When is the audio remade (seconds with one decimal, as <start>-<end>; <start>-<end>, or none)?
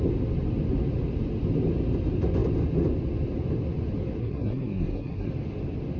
4.2-5.3